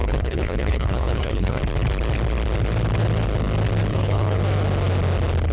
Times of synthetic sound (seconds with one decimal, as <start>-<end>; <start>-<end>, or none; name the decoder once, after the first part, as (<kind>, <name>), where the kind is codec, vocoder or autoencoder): 0.0-1.6 (codec, HILCodec); 3.9-4.4